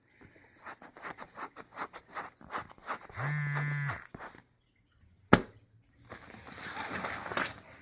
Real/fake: real